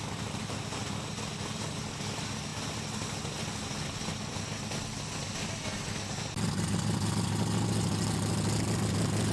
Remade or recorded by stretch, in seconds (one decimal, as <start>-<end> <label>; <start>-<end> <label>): 0.0-9.3 recorded

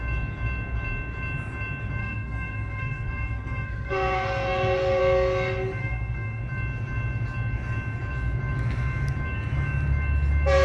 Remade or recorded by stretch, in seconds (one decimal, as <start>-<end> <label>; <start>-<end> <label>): 0.0-2.0 recorded; 2.0-5.0 remade; 5.0-5.8 recorded; 5.8-6.4 remade; 6.4-10.6 recorded

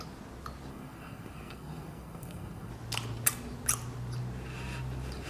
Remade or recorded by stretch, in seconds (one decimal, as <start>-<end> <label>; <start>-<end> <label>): 0.0-0.7 recorded; 0.7-2.7 remade; 2.7-5.3 recorded

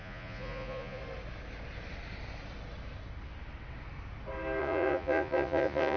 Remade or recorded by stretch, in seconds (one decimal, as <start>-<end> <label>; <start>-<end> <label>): 0.0-1.0 remade; 1.0-4.6 recorded; 4.6-6.0 remade

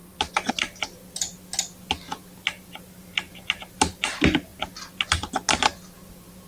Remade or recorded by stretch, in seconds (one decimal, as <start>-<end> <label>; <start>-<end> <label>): 0.0-6.5 recorded

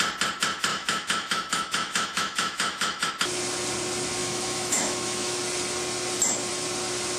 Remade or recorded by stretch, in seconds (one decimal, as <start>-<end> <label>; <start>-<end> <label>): 0.0-0.7 recorded; 0.7-3.1 remade; 3.1-4.2 recorded; 4.2-5.4 remade; 5.4-7.2 recorded

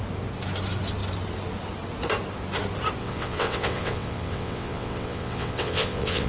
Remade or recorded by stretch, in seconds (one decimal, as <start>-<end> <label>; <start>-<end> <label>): 0.0-3.0 recorded; 3.0-6.3 remade